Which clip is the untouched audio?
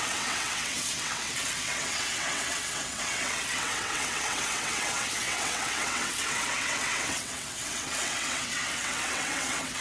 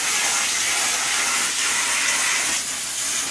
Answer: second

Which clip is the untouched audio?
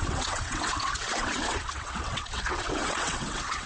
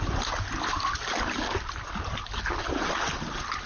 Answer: second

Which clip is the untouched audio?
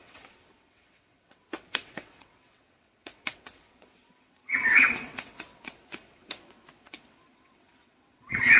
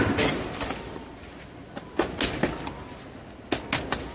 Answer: second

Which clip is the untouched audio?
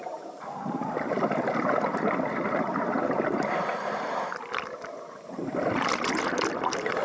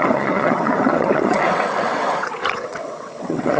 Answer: first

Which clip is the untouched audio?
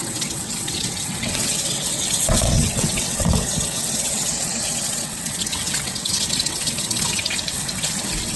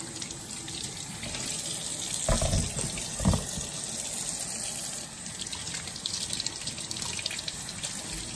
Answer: second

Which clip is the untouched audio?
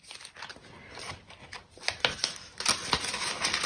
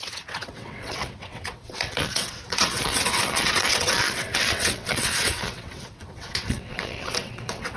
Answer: first